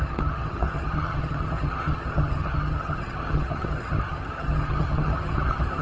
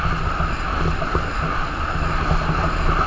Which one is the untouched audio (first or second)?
second